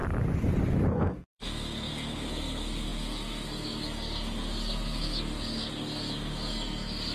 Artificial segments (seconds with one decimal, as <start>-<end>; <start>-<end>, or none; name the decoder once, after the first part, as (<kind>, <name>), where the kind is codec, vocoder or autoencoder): 0.9-7.1 (codec, SNAC)